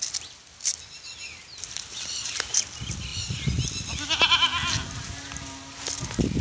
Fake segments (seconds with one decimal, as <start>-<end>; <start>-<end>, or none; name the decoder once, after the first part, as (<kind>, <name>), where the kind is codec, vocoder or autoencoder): none